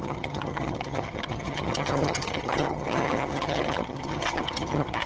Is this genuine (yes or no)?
no